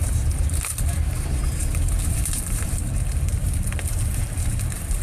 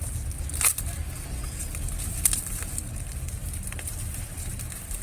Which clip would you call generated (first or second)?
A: first